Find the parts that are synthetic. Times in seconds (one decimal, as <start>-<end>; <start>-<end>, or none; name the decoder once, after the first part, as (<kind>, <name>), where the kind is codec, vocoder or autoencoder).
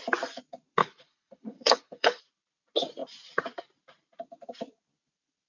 0.8-2.2 (codec, HILCodec)